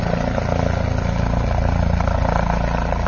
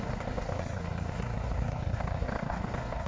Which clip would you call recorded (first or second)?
first